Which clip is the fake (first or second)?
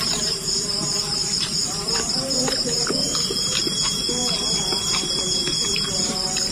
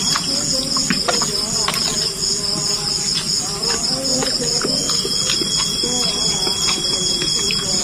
first